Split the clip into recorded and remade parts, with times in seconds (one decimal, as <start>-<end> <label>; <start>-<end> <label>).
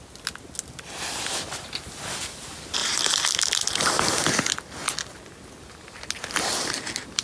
0.0-7.2 recorded